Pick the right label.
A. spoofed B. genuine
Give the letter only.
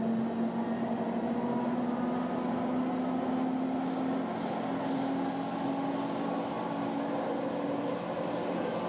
B